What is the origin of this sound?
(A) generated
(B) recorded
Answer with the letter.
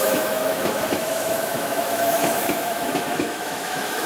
A